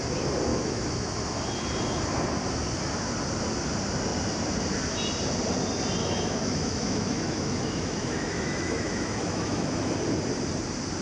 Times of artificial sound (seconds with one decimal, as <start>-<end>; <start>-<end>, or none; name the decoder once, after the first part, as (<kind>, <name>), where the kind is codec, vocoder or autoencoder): 0.5-1.2 (autoencoder, DAC-VAE); 6.0-9.8